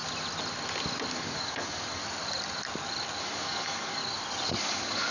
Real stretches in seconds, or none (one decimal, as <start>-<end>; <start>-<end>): 0.0-1.1; 2.0-3.2; 4.0-4.6